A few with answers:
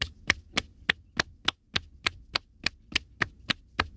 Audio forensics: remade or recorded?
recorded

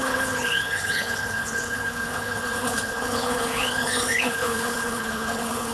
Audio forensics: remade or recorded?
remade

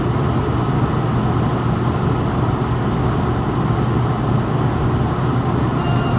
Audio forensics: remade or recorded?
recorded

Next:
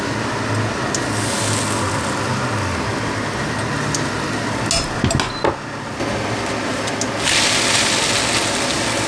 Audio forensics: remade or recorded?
recorded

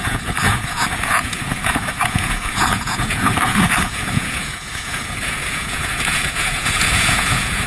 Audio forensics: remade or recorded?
remade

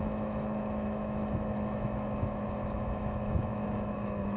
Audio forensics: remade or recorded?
remade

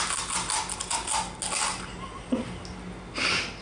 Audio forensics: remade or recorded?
recorded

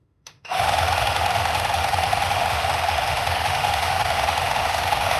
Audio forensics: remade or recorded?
remade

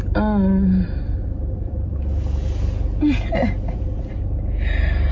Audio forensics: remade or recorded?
recorded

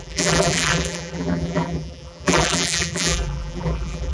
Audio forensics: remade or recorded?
remade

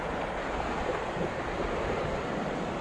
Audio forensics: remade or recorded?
recorded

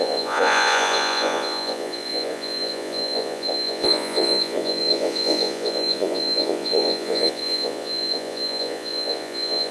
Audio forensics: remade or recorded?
remade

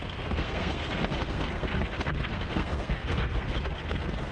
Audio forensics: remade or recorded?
remade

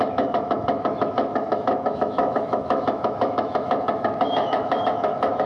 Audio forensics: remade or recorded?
remade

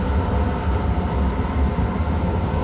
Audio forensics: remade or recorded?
recorded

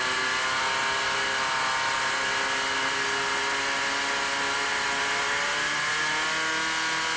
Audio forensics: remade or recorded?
recorded